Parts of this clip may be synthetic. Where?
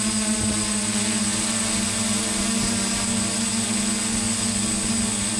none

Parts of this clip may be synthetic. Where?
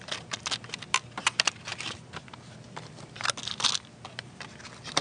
none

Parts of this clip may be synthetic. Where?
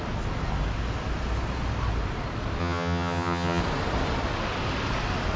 2.6-3.6 (vocoder, HiFi-GAN)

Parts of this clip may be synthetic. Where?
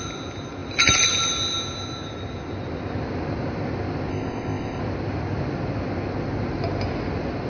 4.1-4.8 (codec, ZipCodec)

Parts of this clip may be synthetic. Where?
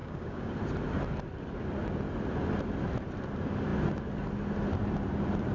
0.0-0.5 (codec, DAC)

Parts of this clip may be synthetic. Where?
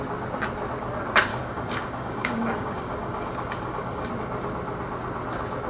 1.3-4.1 (codec, DAC)